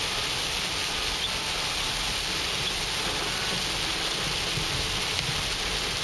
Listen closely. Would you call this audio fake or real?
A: real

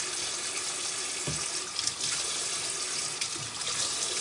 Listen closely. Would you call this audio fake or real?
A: real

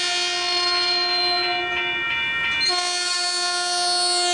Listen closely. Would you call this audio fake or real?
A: real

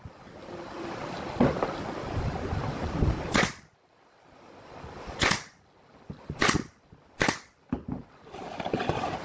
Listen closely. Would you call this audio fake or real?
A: real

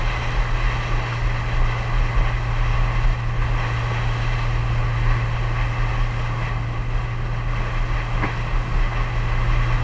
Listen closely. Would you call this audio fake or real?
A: real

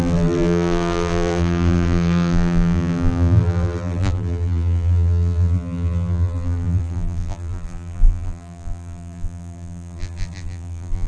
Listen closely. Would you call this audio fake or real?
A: fake